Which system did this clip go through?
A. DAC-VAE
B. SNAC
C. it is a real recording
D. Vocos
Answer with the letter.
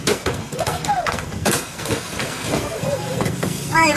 B